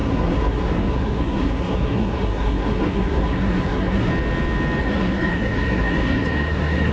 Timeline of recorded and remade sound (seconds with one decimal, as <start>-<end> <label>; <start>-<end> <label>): 0.0-4.1 remade; 4.1-4.8 recorded; 4.8-6.9 remade